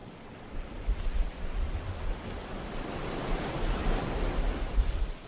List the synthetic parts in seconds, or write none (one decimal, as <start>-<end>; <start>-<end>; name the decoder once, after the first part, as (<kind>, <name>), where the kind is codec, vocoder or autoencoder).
0.0-3.8 (vocoder, BigVGAN v2); 4.6-5.3